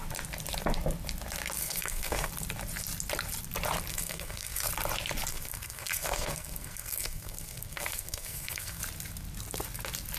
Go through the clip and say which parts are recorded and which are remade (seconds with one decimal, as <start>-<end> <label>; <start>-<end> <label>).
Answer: 0.0-1.6 recorded; 1.6-2.3 remade; 2.3-3.9 recorded; 3.9-4.7 remade; 4.7-5.3 recorded; 5.3-8.8 remade; 8.8-10.2 recorded